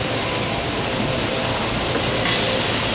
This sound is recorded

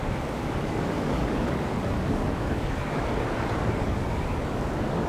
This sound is remade